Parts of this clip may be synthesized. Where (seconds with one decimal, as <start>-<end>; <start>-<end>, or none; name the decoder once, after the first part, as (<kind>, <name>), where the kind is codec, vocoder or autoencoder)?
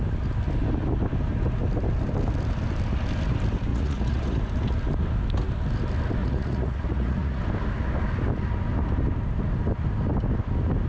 3.7-4.4 (vocoder, Vocos); 6.2-7.4